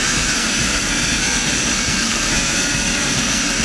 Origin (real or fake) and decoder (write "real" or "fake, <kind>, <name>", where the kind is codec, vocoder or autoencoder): fake, codec, SNAC